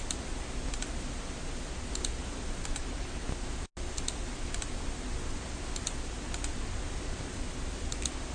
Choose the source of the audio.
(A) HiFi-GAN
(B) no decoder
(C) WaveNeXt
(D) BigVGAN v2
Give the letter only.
B